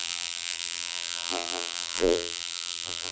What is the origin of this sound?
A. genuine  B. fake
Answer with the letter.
B